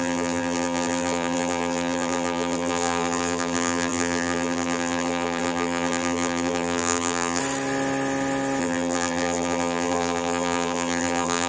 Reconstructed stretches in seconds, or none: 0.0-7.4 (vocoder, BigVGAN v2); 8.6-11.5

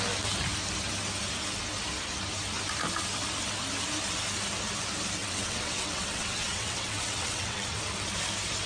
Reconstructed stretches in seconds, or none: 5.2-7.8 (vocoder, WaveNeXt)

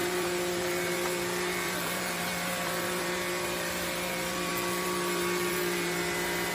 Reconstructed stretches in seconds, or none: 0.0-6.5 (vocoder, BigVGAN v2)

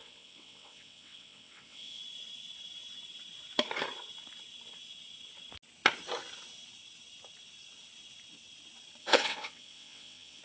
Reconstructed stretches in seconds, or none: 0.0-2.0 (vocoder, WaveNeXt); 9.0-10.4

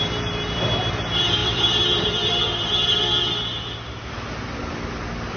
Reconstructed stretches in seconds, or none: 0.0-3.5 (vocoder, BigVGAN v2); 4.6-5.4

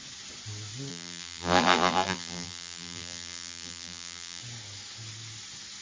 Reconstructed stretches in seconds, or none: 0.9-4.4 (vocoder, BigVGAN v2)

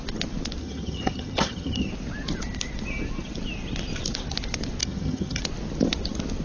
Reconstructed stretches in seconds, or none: 0.6-1.9 (vocoder, HiFi-GAN); 4.8-5.4

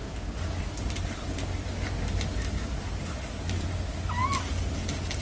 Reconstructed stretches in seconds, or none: none